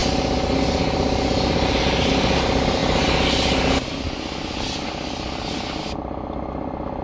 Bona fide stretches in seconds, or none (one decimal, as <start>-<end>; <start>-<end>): 0.0-7.0